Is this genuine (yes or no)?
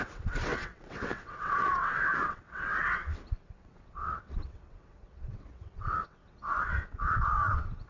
no